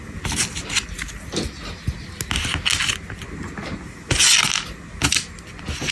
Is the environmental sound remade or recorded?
recorded